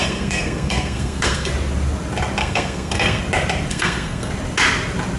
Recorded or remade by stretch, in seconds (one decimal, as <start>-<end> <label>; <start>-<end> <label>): 0.0-1.5 remade; 1.5-2.4 recorded; 2.4-3.2 remade; 3.2-3.7 recorded; 3.7-4.3 remade; 4.3-5.2 recorded